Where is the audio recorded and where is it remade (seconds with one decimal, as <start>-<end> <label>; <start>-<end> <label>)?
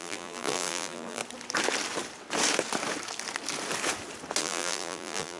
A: 0.0-1.2 remade; 1.2-4.4 recorded; 4.4-5.4 remade